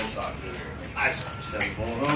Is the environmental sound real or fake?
real